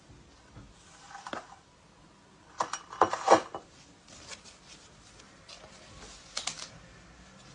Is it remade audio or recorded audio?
recorded